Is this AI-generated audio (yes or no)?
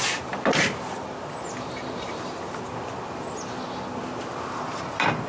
no